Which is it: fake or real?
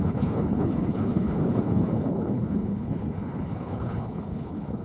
fake